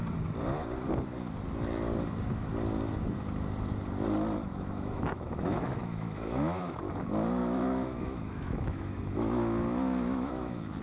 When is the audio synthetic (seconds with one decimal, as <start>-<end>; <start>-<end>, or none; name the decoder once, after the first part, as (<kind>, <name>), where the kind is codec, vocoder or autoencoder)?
4.5-6.9 (autoencoder, DAC-VAE); 7.4-10.8

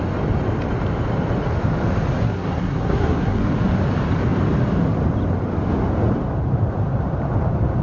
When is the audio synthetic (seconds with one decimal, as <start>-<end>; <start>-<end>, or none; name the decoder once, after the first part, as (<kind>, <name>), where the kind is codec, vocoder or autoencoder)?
2.2-3.5 (codec, SNAC)

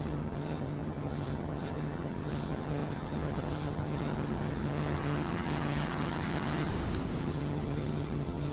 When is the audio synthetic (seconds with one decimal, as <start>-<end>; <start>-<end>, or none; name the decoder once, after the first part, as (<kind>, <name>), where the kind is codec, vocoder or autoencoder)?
0.0-6.7 (vocoder, HiFi-GAN); 7.2-8.5

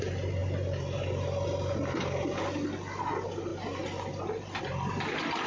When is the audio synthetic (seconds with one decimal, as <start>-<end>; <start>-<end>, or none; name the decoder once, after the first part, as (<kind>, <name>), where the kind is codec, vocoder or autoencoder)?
none

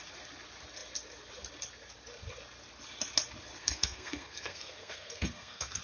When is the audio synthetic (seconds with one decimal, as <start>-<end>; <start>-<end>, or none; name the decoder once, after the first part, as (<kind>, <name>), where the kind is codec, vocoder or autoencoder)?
3.6-5.8 (codec, SNAC)

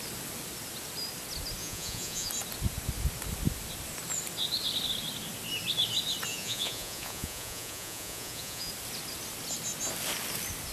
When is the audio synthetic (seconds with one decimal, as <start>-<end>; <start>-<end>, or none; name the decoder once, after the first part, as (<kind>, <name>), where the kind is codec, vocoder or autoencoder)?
1.6-2.3 (vocoder, Vocos); 6.3-8.7

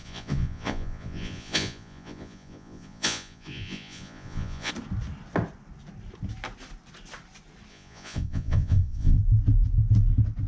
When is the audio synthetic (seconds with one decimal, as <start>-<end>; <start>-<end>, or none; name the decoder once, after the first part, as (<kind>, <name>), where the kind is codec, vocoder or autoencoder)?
0.0-4.7 (vocoder, Vocos); 7.7-9.2

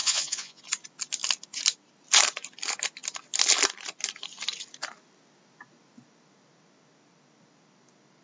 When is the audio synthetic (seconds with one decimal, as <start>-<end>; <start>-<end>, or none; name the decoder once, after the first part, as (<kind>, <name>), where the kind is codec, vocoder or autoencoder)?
0.0-0.6 (vocoder, Vocos)